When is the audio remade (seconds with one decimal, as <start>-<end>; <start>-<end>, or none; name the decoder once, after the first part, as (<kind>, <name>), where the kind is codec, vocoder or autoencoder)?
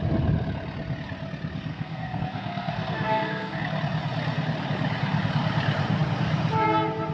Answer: 1.7-3.6 (codec, SNAC)